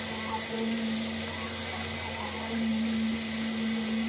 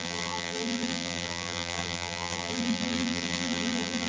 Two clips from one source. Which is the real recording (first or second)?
first